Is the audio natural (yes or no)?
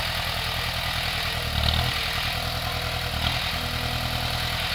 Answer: yes